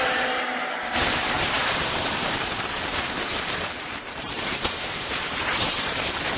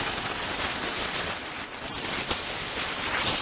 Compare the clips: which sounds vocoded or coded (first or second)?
first